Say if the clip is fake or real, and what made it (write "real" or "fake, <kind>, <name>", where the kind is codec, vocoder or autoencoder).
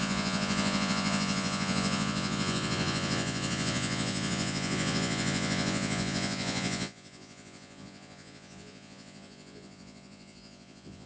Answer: fake, vocoder, Vocos